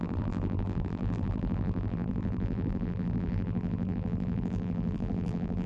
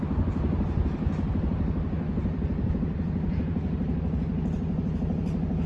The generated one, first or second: first